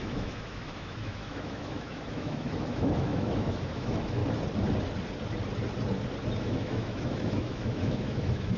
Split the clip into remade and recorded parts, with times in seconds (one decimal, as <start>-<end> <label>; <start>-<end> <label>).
0.0-4.2 remade; 4.2-6.4 recorded; 6.4-8.6 remade